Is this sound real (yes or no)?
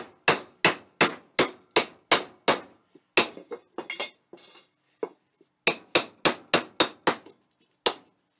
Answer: yes